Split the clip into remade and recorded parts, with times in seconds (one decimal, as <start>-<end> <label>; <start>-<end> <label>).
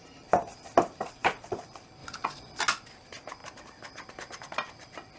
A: 0.0-5.2 recorded